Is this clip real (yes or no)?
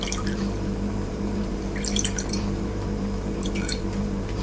no